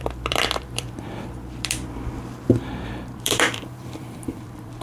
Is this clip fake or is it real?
fake